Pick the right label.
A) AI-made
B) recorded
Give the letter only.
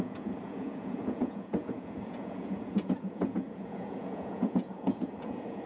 A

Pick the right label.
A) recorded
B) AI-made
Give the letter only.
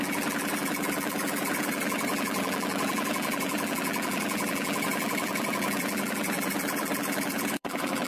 B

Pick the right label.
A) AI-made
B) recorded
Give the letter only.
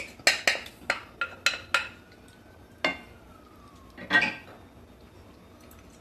B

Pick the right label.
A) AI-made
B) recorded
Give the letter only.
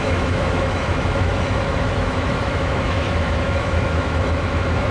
A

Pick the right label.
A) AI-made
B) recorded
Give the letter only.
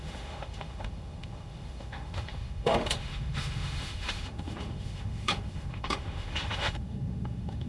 A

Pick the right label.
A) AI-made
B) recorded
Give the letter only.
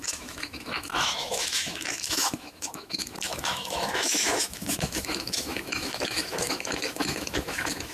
A